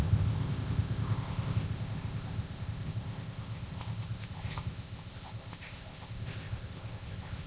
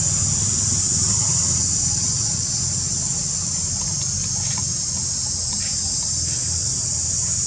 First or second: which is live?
second